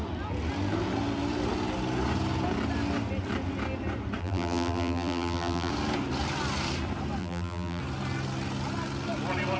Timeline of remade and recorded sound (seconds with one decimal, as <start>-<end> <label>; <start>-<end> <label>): 0.0-4.2 recorded; 4.2-5.7 remade; 5.7-7.2 recorded; 7.2-7.8 remade; 7.8-9.6 recorded